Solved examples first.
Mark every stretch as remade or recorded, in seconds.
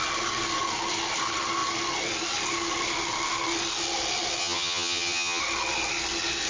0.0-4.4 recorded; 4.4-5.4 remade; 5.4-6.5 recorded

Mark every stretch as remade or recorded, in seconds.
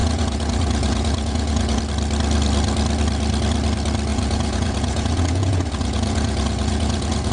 0.0-1.8 remade; 1.8-4.1 recorded; 4.1-7.3 remade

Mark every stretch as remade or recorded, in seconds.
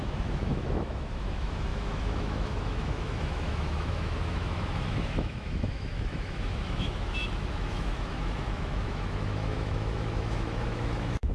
0.0-11.3 remade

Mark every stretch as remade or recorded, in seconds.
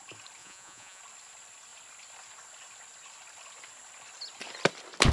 0.0-0.4 recorded; 0.4-1.0 remade; 1.0-5.1 recorded